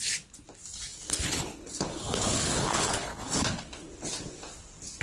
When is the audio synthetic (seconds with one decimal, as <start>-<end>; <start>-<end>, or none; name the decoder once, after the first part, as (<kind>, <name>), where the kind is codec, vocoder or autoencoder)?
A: 0.9-3.9 (codec, HILCodec)